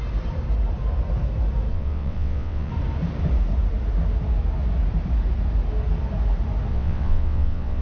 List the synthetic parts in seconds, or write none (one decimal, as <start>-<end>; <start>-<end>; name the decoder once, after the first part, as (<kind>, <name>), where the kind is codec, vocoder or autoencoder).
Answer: 1.7-2.7 (vocoder, WaveNeXt); 6.7-7.8